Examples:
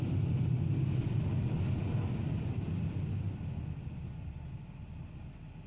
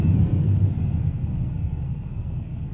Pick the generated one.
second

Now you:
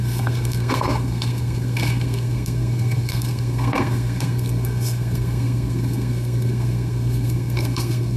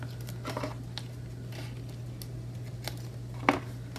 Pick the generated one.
first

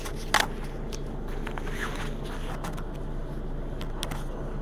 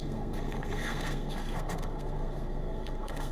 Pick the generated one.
second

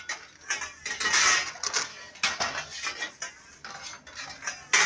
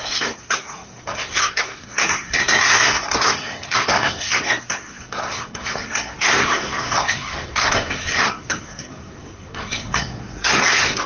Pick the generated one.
second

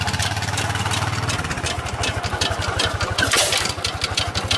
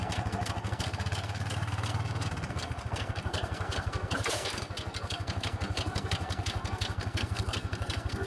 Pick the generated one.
second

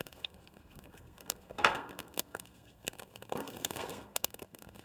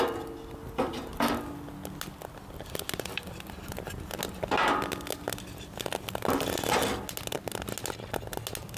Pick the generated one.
first